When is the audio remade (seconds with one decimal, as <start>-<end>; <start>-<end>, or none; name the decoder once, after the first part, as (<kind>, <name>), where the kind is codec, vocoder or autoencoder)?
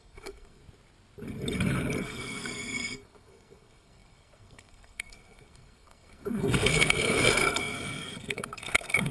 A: 0.0-0.6 (codec, SNAC); 2.0-9.1